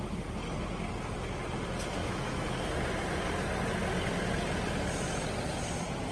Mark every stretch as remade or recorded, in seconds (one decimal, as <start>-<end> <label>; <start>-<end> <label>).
0.0-2.0 recorded; 2.0-2.6 remade; 2.6-6.1 recorded